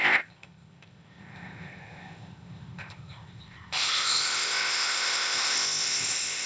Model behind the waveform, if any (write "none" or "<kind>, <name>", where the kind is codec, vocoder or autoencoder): codec, ZipCodec